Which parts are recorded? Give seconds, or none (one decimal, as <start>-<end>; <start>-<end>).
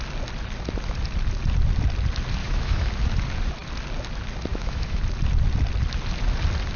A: 0.0-2.4; 2.9-4.5; 5.0-6.8